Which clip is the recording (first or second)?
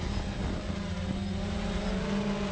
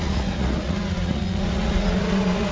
first